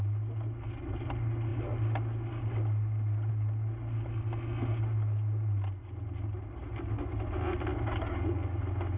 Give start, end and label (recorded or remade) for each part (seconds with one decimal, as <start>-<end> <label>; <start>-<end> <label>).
0.0-9.0 recorded